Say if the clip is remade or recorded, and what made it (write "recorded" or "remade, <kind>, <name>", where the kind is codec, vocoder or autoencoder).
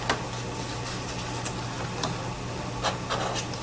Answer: recorded